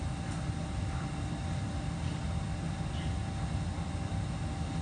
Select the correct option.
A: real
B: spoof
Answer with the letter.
A